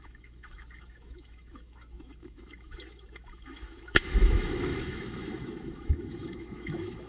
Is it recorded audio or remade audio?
remade